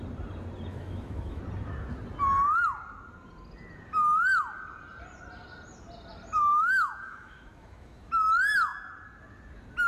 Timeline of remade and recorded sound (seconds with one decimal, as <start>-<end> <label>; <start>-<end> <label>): 0.0-0.7 recorded; 0.7-1.4 remade; 1.4-6.5 recorded; 6.5-8.1 remade; 8.1-9.9 recorded